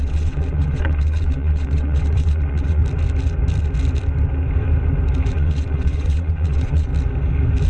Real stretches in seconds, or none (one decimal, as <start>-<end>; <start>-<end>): 2.8-5.3; 6.9-7.7